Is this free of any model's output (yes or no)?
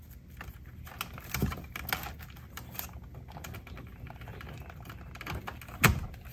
yes